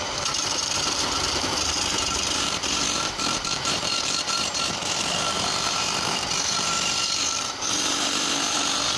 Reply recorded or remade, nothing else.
remade